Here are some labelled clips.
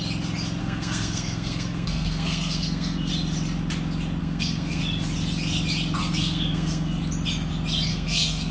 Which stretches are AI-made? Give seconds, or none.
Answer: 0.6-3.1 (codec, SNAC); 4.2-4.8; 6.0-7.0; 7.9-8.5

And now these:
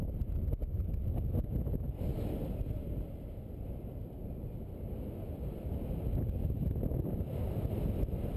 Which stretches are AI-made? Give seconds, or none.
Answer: none